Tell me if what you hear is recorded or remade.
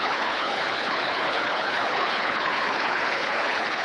remade